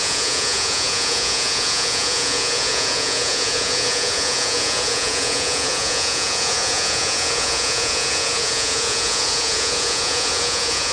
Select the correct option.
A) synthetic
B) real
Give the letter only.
A